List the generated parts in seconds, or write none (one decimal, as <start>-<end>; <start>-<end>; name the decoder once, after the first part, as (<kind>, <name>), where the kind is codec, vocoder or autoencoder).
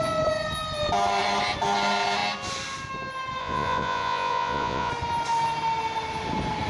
3.4-4.9 (vocoder, Vocos)